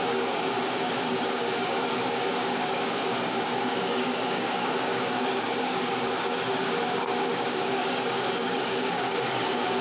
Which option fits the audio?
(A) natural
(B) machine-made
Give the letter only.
B